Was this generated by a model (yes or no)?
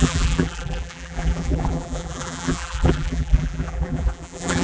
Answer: yes